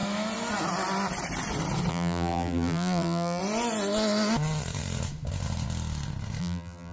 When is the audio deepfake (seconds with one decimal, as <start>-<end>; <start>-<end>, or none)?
1.9-3.4; 6.4-6.9